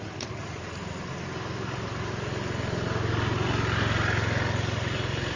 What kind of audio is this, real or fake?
real